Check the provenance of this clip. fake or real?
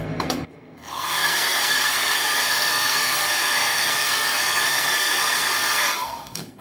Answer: fake